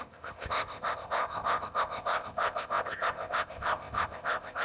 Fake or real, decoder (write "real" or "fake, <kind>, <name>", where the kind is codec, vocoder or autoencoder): fake, codec, ZipCodec